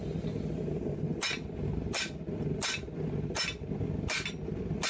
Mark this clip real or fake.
real